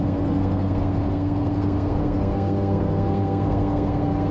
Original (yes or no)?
no